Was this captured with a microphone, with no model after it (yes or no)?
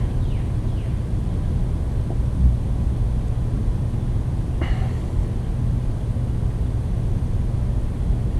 yes